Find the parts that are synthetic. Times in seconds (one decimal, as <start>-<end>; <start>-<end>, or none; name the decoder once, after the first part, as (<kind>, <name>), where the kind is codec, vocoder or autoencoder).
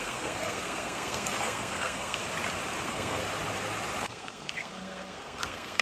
0.0-2.2 (codec, SNAC); 2.8-3.2; 4.0-5.8